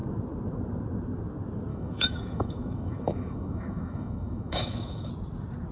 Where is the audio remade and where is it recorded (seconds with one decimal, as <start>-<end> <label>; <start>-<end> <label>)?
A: 0.0-1.7 recorded; 1.7-5.1 remade; 5.1-5.7 recorded